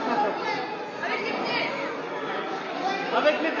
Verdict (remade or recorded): recorded